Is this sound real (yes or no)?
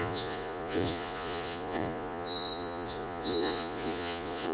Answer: no